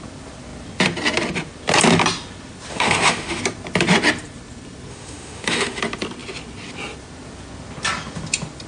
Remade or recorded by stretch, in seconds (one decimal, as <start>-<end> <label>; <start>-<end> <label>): 0.0-2.7 recorded; 2.7-3.4 remade; 3.4-4.9 recorded; 4.9-5.8 remade; 5.8-8.7 recorded